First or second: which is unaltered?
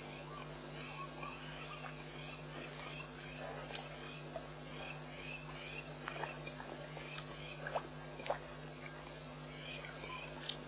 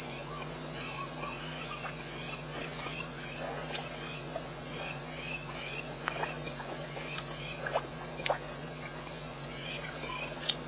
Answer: first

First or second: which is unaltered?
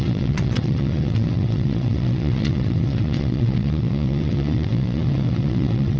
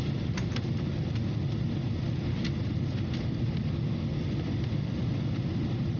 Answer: second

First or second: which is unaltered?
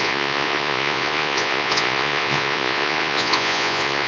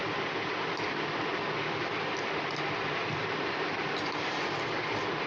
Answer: second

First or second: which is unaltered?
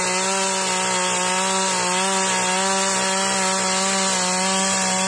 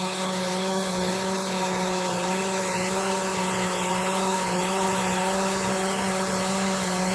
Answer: first